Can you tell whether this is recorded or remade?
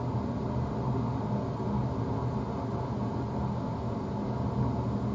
recorded